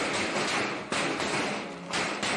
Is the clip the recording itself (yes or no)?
yes